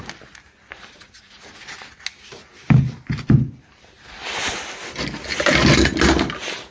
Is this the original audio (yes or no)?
yes